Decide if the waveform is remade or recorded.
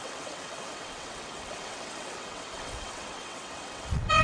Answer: remade